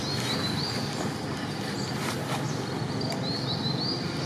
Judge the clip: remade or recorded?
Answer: recorded